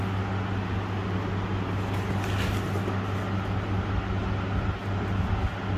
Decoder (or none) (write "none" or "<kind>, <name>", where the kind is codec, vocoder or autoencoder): none